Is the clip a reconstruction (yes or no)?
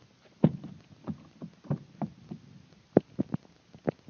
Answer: no